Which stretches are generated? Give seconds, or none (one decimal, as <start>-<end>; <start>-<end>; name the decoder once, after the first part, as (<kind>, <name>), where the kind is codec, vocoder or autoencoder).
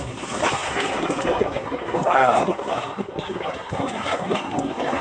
0.0-5.0 (codec, SNAC)